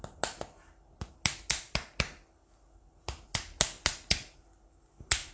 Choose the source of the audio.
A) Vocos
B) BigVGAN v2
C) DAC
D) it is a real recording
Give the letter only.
D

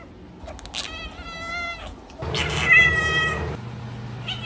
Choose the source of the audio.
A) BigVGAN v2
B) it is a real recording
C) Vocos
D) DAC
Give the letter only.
B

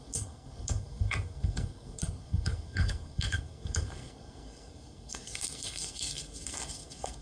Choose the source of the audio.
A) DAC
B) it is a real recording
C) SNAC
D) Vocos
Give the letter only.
C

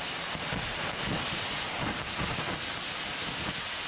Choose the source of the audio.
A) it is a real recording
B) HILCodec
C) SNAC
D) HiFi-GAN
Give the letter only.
A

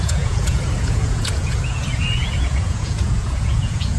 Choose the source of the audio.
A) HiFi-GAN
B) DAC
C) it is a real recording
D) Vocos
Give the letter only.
D